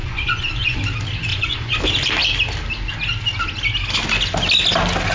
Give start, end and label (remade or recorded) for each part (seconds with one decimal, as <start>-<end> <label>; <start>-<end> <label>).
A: 0.0-0.8 remade; 0.8-1.3 recorded; 1.3-1.8 remade; 1.8-5.1 recorded